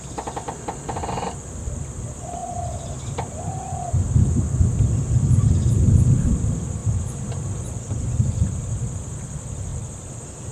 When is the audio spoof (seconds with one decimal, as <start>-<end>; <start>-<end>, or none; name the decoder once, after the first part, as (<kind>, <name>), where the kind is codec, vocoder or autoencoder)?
6.8-7.5 (vocoder, BigVGAN v2)